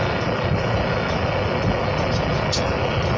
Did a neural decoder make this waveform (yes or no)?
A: no